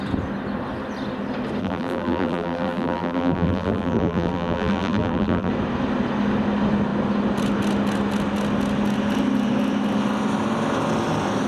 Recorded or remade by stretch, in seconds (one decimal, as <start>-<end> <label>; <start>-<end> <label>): 0.0-1.6 recorded; 1.6-5.5 remade; 5.5-11.5 recorded